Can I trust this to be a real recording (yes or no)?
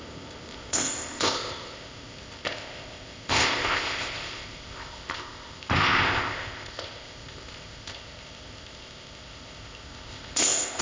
no